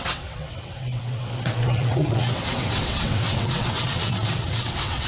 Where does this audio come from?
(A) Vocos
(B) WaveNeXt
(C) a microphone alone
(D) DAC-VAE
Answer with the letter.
B